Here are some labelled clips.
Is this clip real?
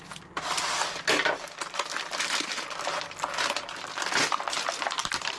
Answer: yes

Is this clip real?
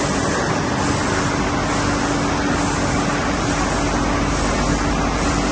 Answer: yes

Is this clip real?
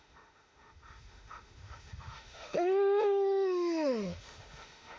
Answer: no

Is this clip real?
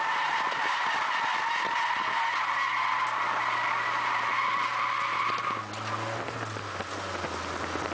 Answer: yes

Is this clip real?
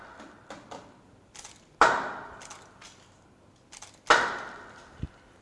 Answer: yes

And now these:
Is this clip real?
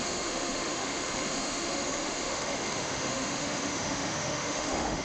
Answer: no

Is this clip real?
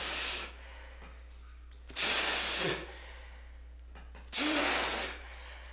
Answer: yes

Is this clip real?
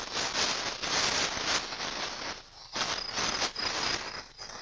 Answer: yes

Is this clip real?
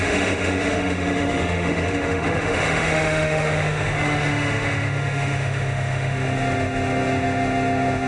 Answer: no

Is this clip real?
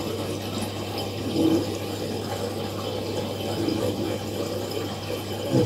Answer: yes